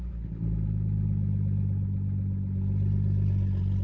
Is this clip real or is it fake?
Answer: real